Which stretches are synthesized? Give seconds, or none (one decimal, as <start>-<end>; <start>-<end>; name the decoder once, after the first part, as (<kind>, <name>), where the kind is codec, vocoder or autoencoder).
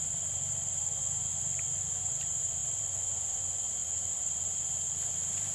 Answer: none